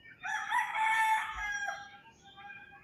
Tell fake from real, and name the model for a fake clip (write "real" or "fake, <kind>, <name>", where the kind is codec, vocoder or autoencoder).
fake, autoencoder, DAC-VAE